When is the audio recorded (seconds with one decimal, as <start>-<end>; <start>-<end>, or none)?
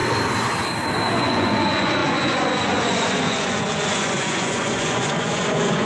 0.0-1.1